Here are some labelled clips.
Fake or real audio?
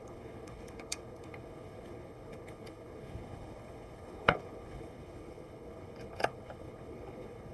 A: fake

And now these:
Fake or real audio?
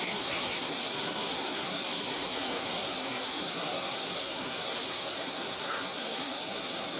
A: fake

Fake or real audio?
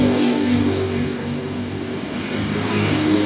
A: fake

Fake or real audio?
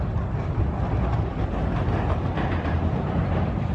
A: real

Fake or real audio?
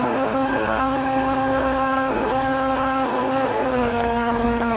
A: fake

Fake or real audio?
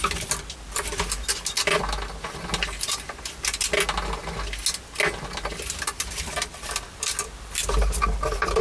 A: real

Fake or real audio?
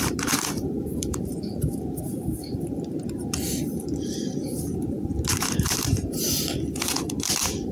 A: fake